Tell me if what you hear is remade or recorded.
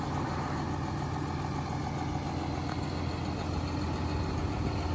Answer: recorded